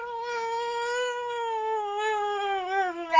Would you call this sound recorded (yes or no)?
no